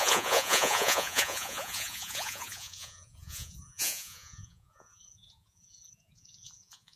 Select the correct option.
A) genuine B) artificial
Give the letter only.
B